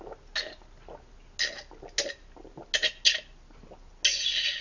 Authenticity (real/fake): real